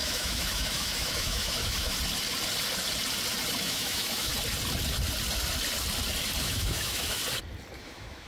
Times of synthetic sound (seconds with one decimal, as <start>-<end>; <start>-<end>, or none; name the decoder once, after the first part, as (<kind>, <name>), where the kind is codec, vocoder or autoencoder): 0.0-1.9 (autoencoder, DAC-VAE); 3.6-4.3; 6.4-7.2; 7.8-8.3